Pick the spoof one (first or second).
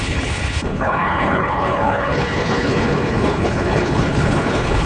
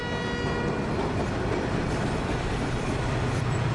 first